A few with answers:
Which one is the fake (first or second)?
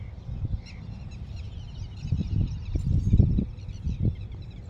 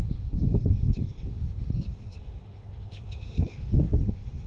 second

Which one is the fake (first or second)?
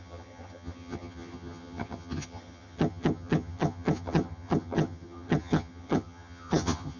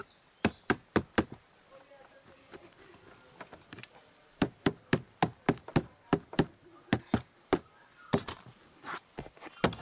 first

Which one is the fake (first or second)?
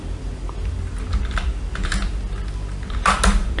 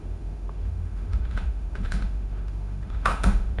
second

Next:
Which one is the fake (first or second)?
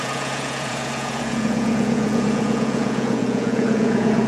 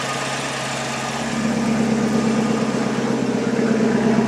first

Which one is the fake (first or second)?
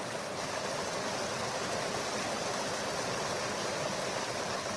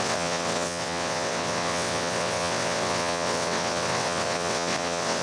second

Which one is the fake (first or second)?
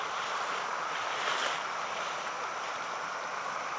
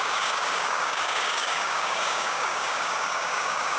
second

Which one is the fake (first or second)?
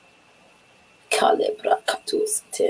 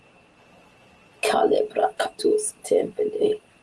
first